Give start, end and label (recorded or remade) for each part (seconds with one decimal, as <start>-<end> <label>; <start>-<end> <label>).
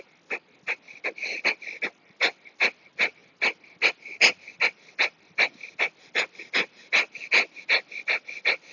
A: 0.0-8.7 recorded